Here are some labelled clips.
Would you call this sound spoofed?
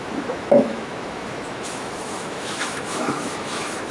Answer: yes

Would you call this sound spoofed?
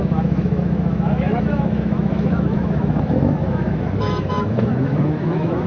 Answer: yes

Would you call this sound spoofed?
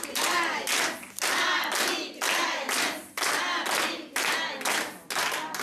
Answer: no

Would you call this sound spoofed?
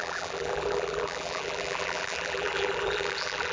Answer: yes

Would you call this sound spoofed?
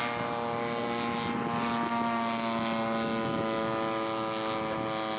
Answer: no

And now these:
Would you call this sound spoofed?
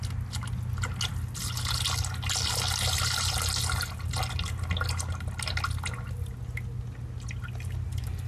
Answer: no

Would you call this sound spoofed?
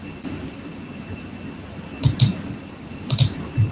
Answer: no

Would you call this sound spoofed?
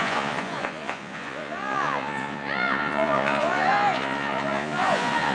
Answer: yes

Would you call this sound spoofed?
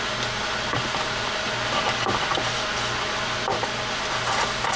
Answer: no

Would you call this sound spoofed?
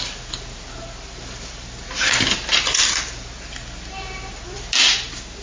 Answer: no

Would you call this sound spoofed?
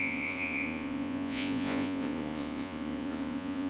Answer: yes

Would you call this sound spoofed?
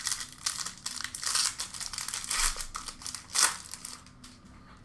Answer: no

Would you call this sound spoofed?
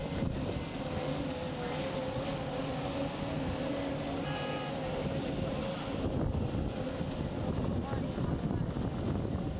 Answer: no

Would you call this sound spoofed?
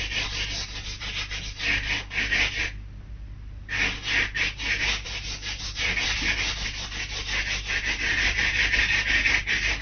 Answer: no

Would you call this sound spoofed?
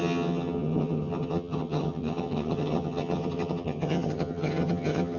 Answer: yes